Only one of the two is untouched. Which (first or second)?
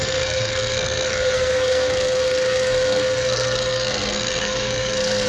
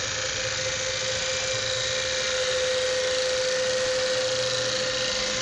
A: second